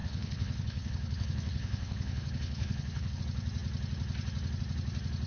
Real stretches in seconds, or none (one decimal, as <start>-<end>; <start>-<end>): 3.2-5.3